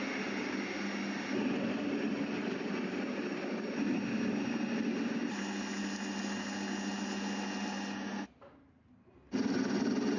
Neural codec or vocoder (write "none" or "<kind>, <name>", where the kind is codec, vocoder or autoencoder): none